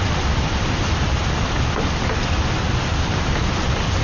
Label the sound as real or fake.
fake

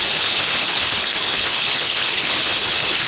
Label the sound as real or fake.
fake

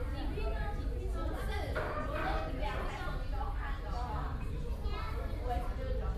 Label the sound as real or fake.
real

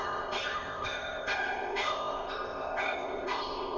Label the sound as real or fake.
fake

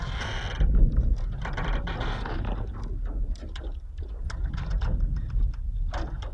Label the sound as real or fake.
real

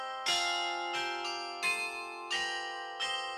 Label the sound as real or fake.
real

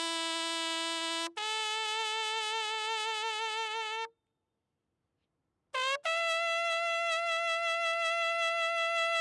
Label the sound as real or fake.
real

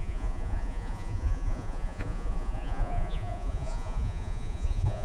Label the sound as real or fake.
fake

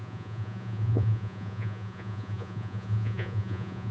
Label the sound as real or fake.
fake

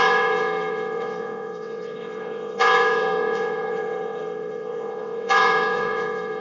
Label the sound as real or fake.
fake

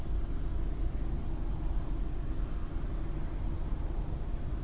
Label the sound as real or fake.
real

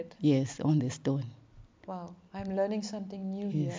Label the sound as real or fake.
real